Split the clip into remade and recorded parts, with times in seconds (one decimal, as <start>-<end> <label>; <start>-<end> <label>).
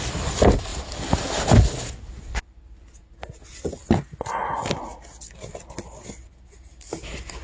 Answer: 0.0-0.7 recorded; 0.7-1.6 remade; 1.6-7.4 recorded